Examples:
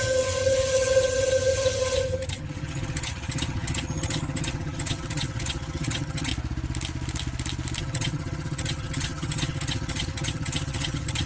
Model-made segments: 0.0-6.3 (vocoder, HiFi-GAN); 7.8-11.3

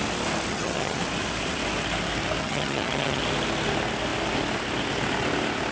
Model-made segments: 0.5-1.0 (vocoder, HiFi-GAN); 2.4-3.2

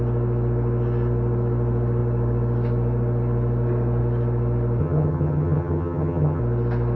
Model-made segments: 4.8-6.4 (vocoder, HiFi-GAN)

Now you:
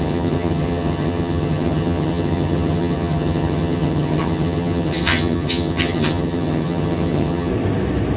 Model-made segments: 0.0-7.5 (vocoder, HiFi-GAN)